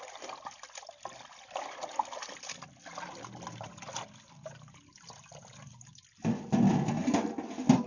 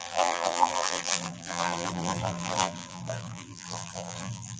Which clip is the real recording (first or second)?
first